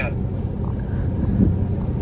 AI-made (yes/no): no